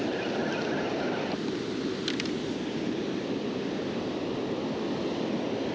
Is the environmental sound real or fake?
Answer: real